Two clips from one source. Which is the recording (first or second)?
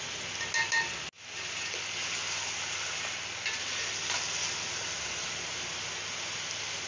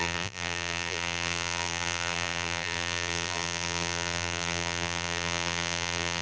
first